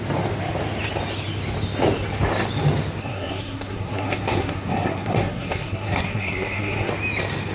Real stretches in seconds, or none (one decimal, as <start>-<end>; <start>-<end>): 0.0-3.0; 6.9-7.5